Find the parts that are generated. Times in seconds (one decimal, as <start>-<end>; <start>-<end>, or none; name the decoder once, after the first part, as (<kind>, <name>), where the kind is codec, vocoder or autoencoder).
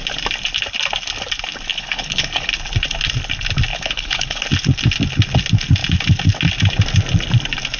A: 1.7-2.5 (codec, HILCodec); 3.7-4.4